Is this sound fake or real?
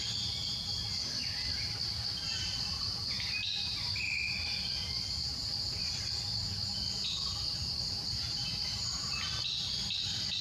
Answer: real